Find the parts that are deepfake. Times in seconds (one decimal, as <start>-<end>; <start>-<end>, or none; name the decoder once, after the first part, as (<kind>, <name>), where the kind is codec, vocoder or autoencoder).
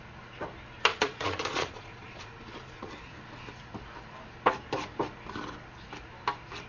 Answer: 0.9-2.9 (vocoder, Vocos)